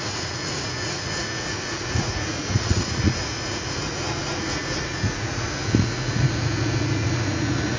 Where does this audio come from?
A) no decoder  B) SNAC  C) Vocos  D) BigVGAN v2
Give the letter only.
C